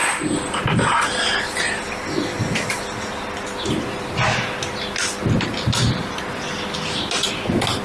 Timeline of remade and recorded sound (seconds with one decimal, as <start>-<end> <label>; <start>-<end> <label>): 0.0-7.8 recorded